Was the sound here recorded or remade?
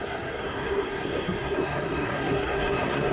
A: remade